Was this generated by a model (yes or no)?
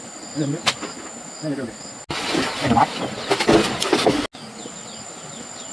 no